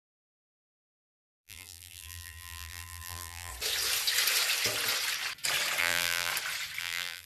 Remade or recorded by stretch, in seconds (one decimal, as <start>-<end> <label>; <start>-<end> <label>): 0.0-3.5 remade; 3.5-5.8 recorded; 5.8-6.3 remade; 6.3-6.8 recorded; 6.8-7.3 remade